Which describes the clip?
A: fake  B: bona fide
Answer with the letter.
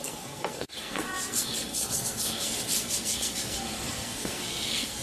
A